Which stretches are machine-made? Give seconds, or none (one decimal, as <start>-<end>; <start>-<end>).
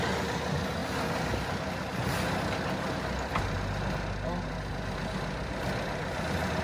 none